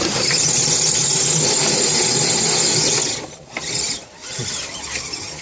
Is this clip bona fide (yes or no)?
yes